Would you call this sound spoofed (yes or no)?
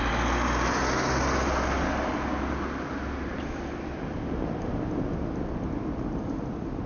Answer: no